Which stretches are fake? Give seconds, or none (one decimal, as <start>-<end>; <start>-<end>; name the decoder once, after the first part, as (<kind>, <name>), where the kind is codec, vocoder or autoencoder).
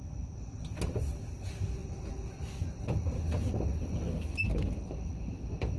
none